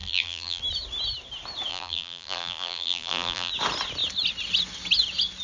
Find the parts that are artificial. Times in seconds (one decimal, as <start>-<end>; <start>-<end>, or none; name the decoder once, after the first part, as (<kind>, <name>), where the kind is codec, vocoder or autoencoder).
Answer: 0.0-0.6 (vocoder, BigVGAN v2); 1.7-3.5